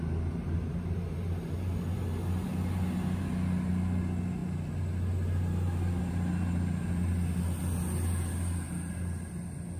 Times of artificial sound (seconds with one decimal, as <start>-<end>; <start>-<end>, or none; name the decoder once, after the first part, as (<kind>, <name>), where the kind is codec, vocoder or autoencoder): none